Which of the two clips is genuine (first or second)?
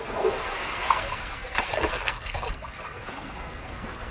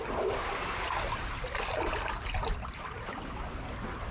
second